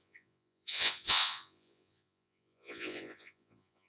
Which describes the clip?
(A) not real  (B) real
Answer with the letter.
A